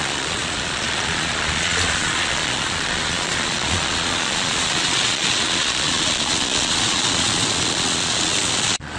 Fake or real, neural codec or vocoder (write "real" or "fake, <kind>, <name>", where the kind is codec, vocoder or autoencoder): fake, vocoder, Vocos